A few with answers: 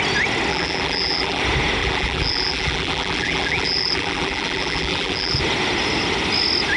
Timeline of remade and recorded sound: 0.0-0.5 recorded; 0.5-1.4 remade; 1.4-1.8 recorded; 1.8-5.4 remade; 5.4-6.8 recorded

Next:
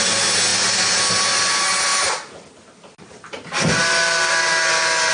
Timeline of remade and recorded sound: 0.0-5.1 recorded

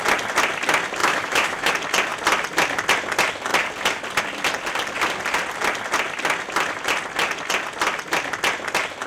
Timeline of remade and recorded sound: 0.0-1.0 recorded; 1.0-1.7 remade; 1.7-9.1 recorded